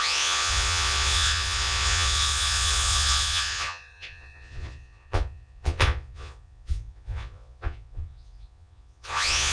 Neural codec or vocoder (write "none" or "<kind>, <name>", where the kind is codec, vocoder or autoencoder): vocoder, Vocos